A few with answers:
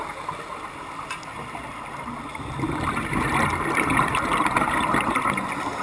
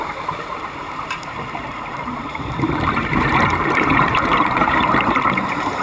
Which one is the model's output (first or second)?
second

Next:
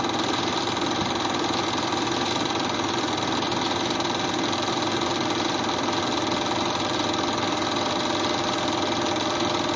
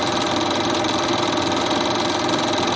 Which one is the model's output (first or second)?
second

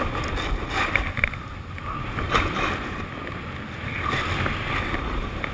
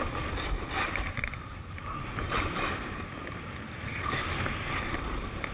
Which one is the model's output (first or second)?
second